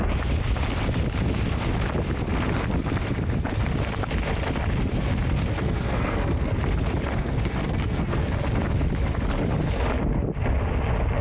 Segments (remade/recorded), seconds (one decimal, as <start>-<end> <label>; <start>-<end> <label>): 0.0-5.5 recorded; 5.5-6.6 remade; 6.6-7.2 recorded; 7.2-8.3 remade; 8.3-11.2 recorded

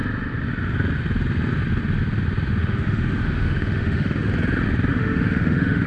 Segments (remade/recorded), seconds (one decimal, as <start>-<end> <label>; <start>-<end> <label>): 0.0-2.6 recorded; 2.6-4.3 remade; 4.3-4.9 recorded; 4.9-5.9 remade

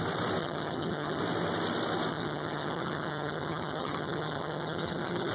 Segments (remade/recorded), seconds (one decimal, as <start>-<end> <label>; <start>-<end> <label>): 0.0-0.4 recorded; 0.4-1.2 remade; 1.2-2.1 recorded; 2.1-5.3 remade